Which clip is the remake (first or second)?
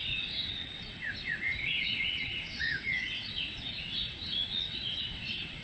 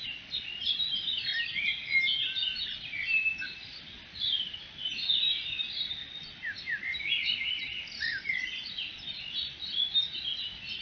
first